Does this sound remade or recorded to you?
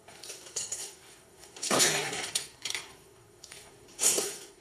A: remade